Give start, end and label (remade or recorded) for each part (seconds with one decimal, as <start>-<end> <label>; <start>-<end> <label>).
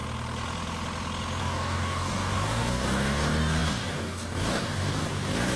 0.0-1.4 recorded; 1.4-5.6 remade